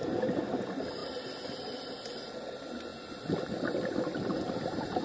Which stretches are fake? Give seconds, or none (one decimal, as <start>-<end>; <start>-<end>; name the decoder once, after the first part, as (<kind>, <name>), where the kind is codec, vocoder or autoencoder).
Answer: none